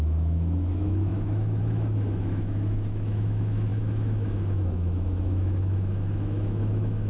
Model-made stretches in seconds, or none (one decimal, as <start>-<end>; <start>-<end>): 0.0-7.1